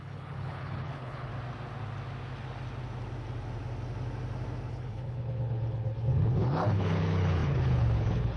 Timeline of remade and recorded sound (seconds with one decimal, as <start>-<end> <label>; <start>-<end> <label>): 0.0-1.3 remade; 1.3-4.7 recorded; 4.7-8.4 remade